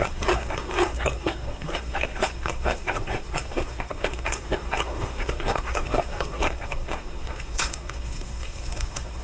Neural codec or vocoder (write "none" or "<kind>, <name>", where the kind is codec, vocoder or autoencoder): codec, SNAC